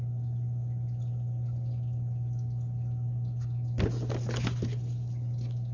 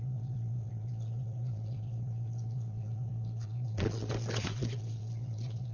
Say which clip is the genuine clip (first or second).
first